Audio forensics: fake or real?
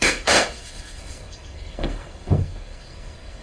fake